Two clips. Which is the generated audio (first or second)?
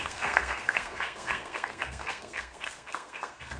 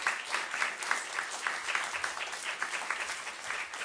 first